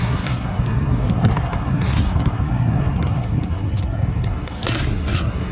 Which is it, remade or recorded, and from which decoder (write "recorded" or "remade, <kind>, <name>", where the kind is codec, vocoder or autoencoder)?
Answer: remade, codec, SNAC